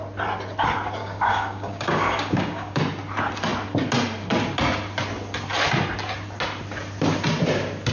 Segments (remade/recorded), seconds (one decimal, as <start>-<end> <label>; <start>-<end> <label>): 0.0-1.0 recorded; 1.0-2.8 remade; 2.8-7.9 recorded